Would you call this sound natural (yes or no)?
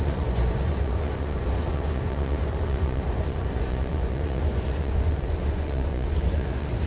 no